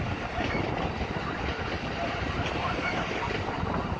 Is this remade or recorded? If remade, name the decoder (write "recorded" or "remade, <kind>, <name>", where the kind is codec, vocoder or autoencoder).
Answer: recorded